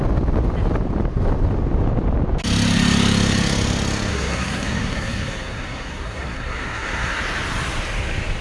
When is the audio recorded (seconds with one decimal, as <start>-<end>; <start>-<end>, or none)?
0.0-4.1; 7.2-8.4